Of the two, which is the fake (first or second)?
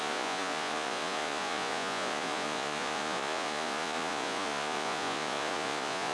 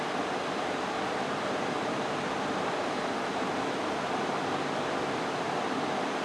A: first